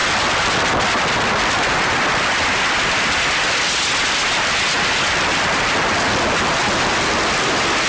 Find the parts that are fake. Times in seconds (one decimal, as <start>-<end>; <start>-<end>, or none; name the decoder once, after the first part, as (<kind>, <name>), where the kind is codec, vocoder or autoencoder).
none